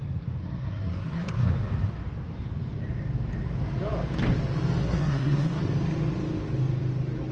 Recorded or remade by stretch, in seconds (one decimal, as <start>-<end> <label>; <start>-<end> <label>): 0.0-0.4 recorded; 0.4-1.5 remade; 1.5-4.8 recorded; 4.8-5.6 remade; 5.6-7.3 recorded